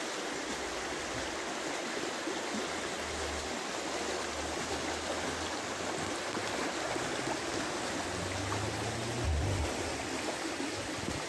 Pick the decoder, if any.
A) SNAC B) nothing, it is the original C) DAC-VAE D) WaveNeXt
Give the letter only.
B